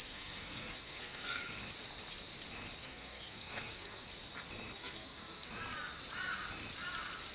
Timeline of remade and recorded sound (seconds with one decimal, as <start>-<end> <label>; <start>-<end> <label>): 0.0-1.4 remade; 1.4-2.8 recorded; 2.8-4.1 remade; 4.1-4.8 recorded; 4.8-5.5 remade; 5.5-7.3 recorded